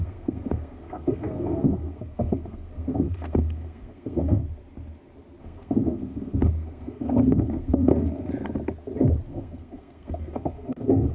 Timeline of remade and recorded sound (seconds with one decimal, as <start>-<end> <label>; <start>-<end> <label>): 0.0-4.4 remade; 4.4-5.4 recorded; 5.4-8.3 remade; 8.3-9.3 recorded; 9.3-11.1 remade